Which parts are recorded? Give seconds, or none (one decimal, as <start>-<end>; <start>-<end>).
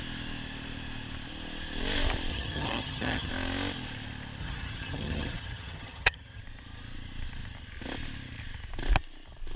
0.0-2.3; 3.3-4.4; 6.4-9.6